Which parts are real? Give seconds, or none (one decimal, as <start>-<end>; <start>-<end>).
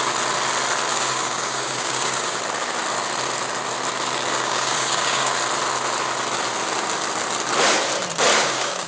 0.0-0.9; 2.4-4.3; 5.3-8.3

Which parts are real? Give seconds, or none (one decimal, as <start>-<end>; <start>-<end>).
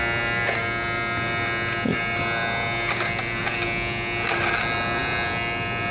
0.0-5.9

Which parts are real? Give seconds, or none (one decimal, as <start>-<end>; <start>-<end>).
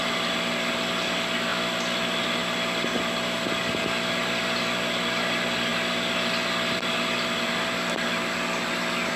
1.5-2.0